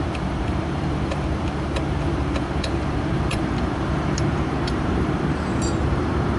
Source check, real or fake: fake